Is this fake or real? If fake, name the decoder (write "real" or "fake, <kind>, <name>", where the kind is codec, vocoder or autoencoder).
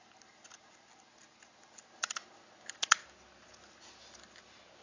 real